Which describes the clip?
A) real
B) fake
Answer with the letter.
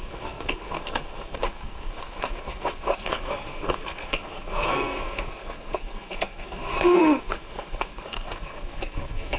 B